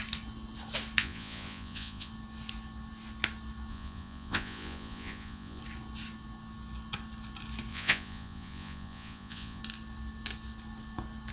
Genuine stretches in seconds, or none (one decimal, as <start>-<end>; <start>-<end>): 0.0-1.0; 2.1-3.7; 5.6-7.7; 9.6-11.3